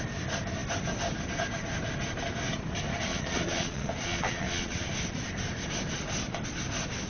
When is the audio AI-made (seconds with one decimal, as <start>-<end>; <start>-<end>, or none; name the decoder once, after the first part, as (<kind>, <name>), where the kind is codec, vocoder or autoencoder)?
3.1-4.9 (vocoder, WaveNeXt)